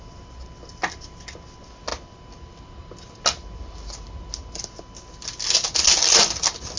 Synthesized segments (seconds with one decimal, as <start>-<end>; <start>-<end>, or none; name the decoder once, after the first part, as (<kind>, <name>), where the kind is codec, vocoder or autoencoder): none